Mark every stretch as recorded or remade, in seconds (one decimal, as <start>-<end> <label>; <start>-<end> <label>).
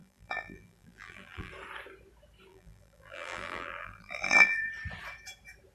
0.0-1.5 remade; 1.5-2.5 recorded; 2.5-4.7 remade; 4.7-5.7 recorded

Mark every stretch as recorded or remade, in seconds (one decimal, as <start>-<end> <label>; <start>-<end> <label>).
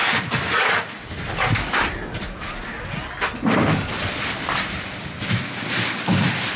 0.0-6.6 remade